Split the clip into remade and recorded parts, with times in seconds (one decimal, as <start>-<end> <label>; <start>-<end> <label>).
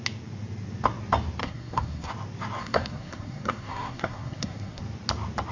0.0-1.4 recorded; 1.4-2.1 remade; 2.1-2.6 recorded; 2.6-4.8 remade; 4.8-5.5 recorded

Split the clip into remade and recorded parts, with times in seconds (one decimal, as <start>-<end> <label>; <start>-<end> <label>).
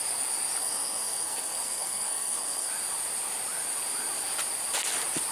0.0-0.6 recorded; 0.6-2.7 remade; 2.7-5.3 recorded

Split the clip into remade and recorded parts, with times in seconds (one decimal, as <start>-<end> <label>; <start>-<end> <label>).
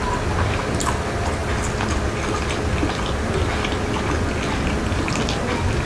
0.0-5.9 recorded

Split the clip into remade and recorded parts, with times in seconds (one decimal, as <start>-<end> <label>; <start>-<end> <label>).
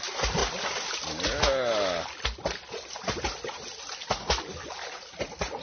0.0-5.6 recorded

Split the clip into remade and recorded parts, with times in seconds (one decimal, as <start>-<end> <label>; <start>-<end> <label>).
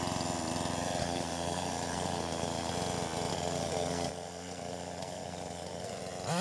0.0-1.0 recorded; 1.0-2.7 remade; 2.7-3.3 recorded; 3.3-6.0 remade; 6.0-6.4 recorded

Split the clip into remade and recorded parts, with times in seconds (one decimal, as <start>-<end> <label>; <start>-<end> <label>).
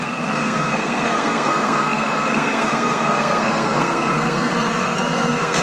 0.0-5.6 remade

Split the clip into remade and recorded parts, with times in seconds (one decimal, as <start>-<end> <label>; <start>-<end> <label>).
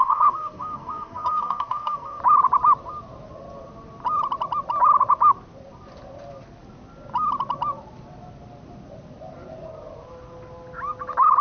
0.0-2.2 remade; 2.2-11.4 recorded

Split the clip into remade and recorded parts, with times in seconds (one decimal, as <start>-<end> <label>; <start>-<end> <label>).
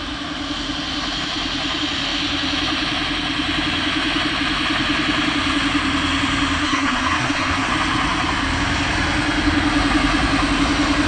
0.0-6.6 recorded; 6.6-7.7 remade; 7.7-11.1 recorded